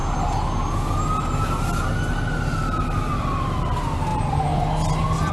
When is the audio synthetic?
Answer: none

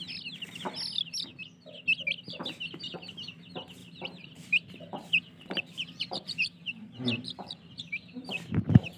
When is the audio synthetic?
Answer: 3.8-9.0 (vocoder, BigVGAN v2)

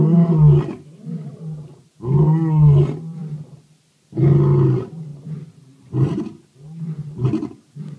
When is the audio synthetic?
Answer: 5.1-6.2 (vocoder, BigVGAN v2)

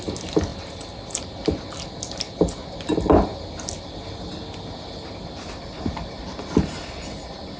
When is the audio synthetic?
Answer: 0.5-1.2 (vocoder, BigVGAN v2)